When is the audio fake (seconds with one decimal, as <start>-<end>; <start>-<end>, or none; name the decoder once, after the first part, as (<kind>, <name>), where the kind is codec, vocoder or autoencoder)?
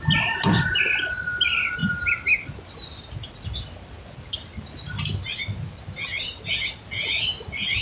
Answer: none